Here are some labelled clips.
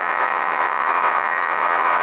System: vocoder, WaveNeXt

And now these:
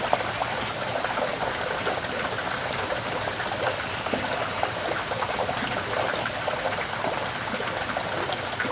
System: none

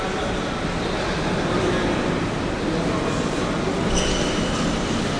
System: none